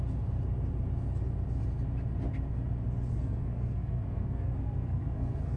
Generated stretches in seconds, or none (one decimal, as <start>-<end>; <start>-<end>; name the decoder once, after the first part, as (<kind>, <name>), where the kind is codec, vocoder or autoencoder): 3.1-5.6 (codec, SNAC)